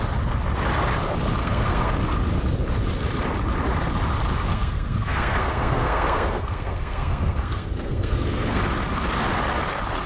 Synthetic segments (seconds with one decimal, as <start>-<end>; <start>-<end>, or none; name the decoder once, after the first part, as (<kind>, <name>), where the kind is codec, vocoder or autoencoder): 1.4-1.9 (codec, SNAC); 4.5-8.6